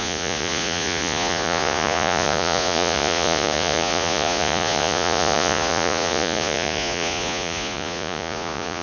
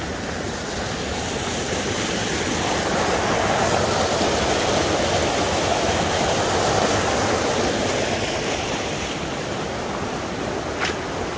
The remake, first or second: first